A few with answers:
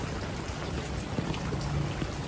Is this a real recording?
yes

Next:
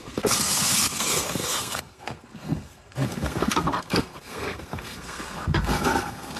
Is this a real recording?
no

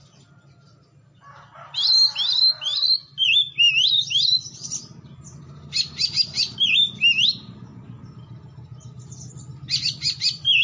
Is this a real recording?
yes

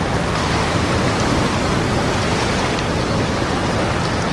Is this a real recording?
yes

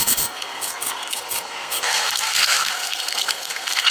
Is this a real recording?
no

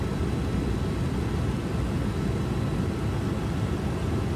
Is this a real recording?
yes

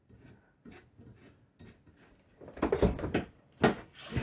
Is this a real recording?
yes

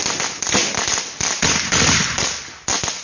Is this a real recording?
yes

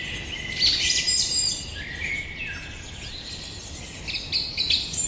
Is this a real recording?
yes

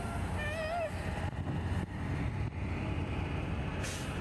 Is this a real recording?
yes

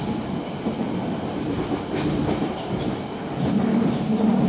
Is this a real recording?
yes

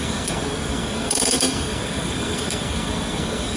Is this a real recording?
no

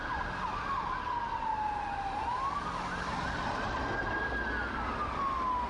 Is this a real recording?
yes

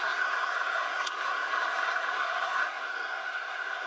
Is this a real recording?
no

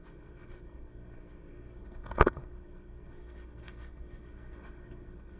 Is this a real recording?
no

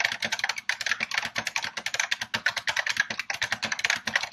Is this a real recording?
yes